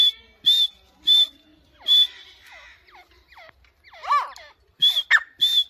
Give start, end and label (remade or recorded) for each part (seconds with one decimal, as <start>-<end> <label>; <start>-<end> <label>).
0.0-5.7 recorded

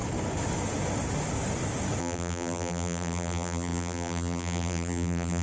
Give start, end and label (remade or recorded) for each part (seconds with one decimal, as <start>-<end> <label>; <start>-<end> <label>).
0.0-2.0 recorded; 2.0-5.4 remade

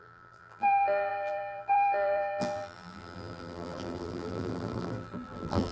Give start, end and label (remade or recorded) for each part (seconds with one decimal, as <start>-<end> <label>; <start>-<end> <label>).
0.0-5.7 remade

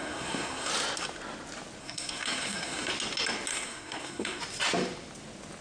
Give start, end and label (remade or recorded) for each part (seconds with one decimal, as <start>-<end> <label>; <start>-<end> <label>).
0.0-0.7 remade; 0.7-1.8 recorded; 1.8-2.9 remade; 2.9-3.5 recorded; 3.5-4.4 remade; 4.4-5.6 recorded

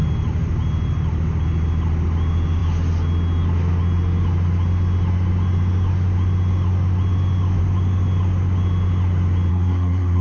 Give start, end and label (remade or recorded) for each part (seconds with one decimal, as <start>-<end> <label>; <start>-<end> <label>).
0.0-9.5 recorded; 9.5-10.2 remade